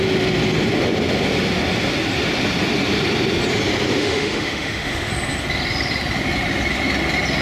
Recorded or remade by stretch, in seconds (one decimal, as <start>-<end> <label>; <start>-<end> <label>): 0.0-4.0 recorded; 4.0-5.1 remade; 5.1-7.4 recorded